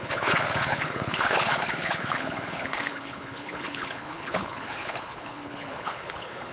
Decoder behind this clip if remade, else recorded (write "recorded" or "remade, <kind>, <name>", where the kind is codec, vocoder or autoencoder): remade, codec, HILCodec